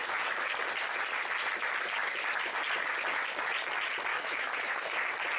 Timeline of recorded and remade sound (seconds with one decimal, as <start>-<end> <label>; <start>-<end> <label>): 0.0-4.1 recorded; 4.1-4.7 remade; 4.7-5.4 recorded